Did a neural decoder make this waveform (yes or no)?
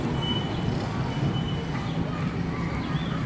no